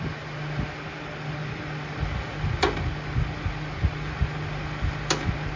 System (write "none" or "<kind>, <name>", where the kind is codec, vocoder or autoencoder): none